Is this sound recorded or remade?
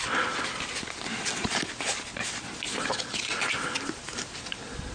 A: recorded